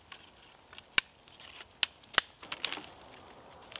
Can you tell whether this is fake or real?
real